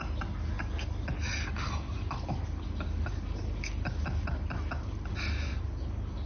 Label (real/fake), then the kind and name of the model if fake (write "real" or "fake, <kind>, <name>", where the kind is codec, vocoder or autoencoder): real